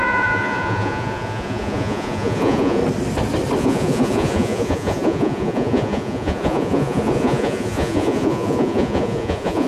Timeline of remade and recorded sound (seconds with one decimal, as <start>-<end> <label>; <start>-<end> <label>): 0.0-2.8 remade; 2.8-3.6 recorded; 3.6-9.7 remade